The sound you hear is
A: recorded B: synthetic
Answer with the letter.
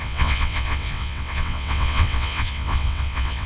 B